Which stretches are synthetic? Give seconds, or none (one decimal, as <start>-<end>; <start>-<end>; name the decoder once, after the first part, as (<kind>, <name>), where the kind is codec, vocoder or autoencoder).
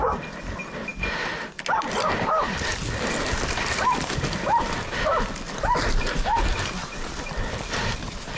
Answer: 4.6-5.2 (vocoder, BigVGAN v2); 6.8-7.4